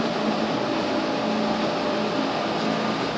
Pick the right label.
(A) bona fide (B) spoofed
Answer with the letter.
A